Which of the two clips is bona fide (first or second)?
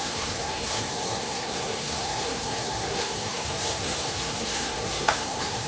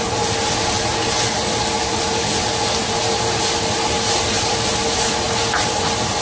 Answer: second